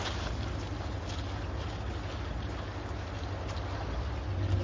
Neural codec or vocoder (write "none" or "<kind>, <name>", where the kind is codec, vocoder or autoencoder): none